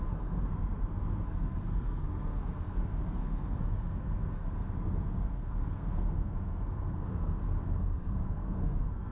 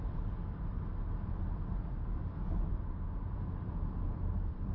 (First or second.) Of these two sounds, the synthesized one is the first